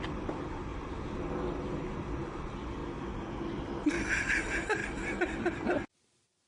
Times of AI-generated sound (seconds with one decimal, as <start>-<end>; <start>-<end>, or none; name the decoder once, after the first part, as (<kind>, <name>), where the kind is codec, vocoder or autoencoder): none